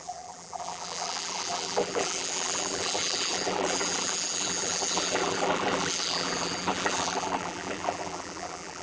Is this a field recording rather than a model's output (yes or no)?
no